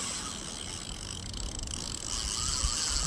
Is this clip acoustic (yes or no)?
yes